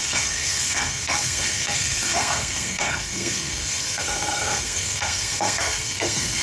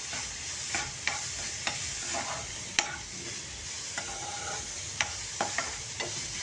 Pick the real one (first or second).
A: second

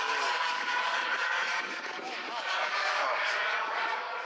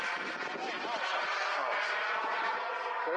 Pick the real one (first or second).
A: second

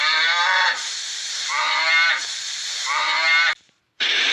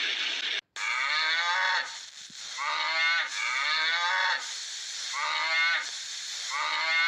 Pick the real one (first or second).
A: second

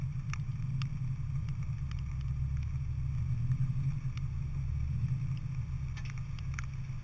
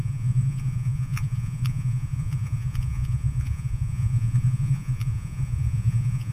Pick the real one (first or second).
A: first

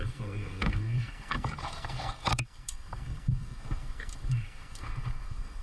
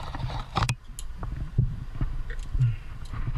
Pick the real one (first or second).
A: second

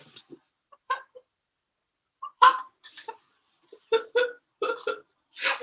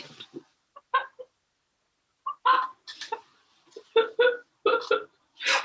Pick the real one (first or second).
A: second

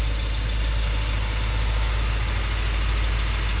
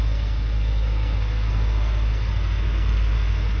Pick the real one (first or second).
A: first